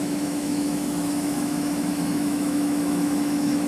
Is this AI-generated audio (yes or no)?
yes